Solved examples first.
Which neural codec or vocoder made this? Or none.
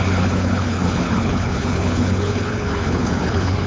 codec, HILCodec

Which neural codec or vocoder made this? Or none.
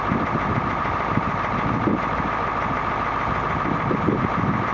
none